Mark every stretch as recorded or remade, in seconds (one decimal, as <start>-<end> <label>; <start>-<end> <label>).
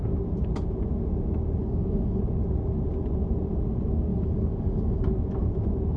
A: 0.0-1.6 recorded; 1.6-2.2 remade; 2.2-4.1 recorded; 4.1-5.0 remade; 5.0-6.0 recorded